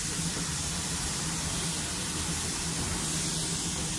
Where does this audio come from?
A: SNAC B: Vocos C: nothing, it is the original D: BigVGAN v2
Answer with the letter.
C